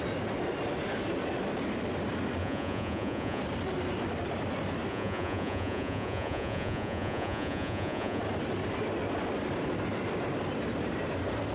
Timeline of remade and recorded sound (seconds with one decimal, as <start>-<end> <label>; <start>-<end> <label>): 0.0-2.4 recorded; 2.4-3.4 remade; 3.4-4.9 recorded; 4.9-8.2 remade; 8.2-11.5 recorded